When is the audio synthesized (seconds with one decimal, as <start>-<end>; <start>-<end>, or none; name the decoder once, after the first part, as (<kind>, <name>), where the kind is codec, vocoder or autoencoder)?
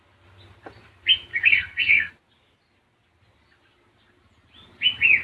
1.3-2.1 (codec, SNAC)